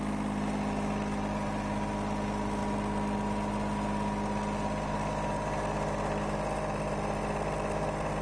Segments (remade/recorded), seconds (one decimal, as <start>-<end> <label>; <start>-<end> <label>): 0.0-8.2 recorded